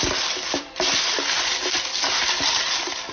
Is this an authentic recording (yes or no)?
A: yes